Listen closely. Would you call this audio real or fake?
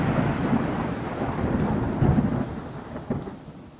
real